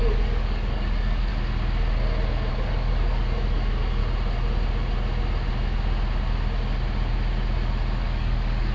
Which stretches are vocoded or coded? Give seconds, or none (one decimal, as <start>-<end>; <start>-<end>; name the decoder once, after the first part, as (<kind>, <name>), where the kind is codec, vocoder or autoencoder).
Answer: 0.0-1.3 (codec, DAC); 2.5-4.0; 8.0-8.7